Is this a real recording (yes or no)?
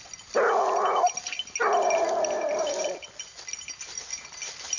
yes